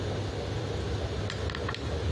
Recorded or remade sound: recorded